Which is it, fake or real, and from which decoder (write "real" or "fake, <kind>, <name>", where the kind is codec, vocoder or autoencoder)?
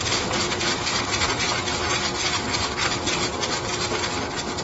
real